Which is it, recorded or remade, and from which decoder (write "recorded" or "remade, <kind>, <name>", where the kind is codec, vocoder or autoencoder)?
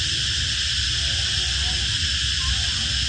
recorded